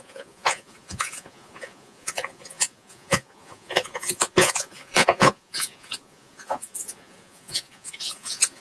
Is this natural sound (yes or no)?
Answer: no